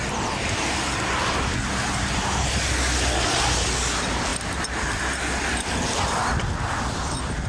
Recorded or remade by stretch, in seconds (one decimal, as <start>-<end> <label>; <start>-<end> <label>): 0.0-7.5 recorded